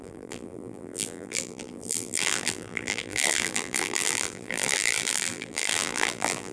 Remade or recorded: remade